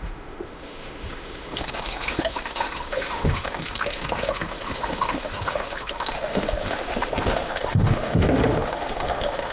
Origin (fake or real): fake